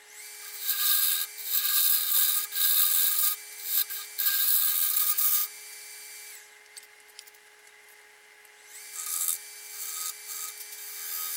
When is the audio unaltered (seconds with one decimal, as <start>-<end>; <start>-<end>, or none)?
0.0-11.4